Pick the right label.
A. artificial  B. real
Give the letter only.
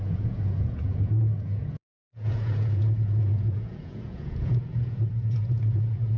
A